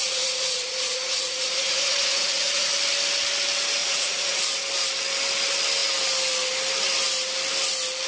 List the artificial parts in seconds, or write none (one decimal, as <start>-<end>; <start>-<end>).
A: 0.0-2.7; 3.8-4.4

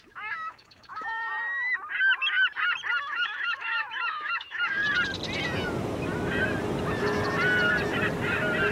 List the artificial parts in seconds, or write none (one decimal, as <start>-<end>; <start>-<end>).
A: 0.0-1.3; 3.0-4.8

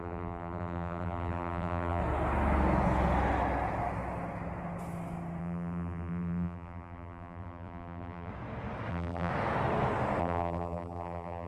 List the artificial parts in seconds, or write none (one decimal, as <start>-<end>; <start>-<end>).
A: 0.0-2.0; 5.4-8.3; 8.9-9.3; 10.2-11.5

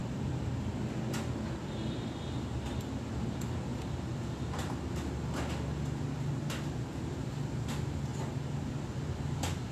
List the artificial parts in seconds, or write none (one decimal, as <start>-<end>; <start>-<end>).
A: none

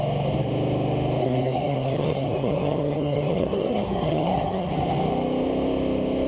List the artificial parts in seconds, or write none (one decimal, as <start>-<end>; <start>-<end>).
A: 1.2-4.7